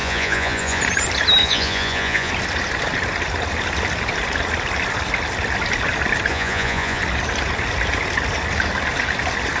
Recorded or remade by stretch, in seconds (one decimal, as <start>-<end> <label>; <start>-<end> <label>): 0.0-0.8 remade; 0.8-1.4 recorded; 1.4-2.3 remade; 2.3-6.3 recorded; 6.3-7.0 remade; 7.0-9.6 recorded